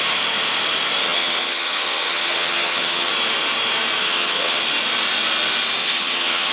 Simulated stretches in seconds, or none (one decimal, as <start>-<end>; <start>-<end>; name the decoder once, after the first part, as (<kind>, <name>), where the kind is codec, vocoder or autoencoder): 1.0-3.1 (vocoder, HiFi-GAN); 4.0-4.6; 5.8-6.5